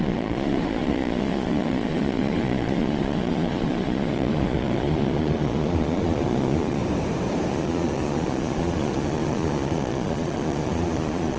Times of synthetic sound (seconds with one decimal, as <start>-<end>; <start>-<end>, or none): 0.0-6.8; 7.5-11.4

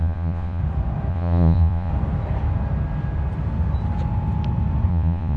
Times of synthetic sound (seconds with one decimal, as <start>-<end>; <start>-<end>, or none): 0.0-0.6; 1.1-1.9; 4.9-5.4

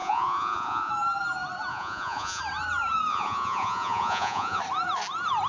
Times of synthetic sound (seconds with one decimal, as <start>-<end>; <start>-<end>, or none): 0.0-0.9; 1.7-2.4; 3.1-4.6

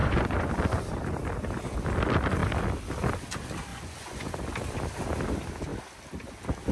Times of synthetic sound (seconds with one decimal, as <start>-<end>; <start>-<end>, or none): 0.0-0.5; 3.7-4.3

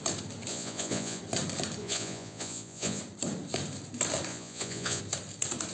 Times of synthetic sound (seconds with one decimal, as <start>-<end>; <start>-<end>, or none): 0.5-1.2; 1.8-3.0; 4.3-5.0